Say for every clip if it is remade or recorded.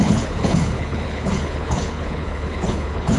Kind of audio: remade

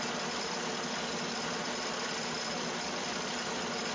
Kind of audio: recorded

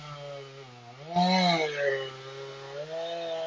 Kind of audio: recorded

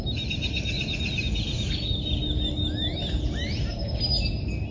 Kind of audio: recorded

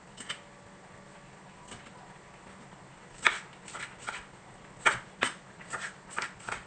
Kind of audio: recorded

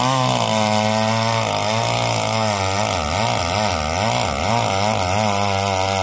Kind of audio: recorded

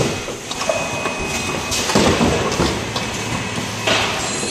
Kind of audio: recorded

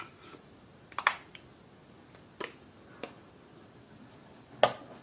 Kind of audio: recorded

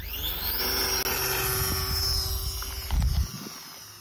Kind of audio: recorded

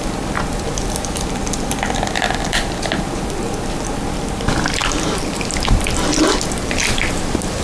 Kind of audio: recorded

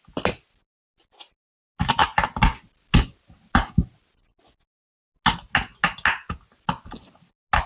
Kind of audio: recorded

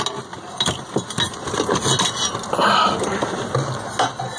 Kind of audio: recorded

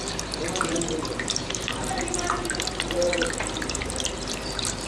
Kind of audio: remade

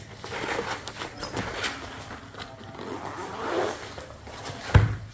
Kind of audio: recorded